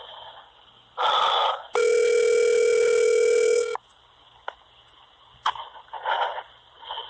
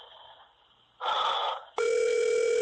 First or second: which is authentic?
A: first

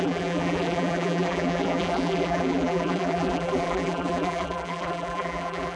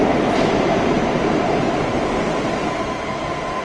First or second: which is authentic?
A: second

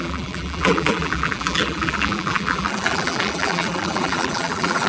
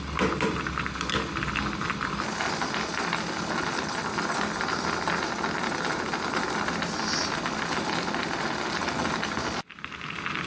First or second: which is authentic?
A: second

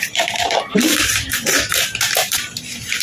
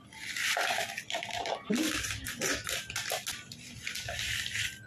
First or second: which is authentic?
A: second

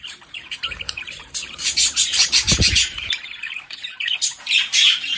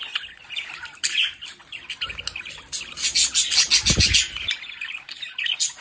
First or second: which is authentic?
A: second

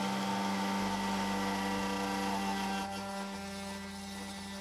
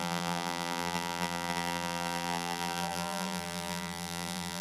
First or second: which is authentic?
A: first